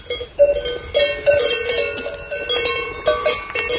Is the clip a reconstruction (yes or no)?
no